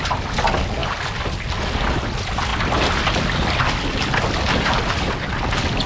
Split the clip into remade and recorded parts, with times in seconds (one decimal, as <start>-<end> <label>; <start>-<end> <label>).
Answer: 0.0-5.9 recorded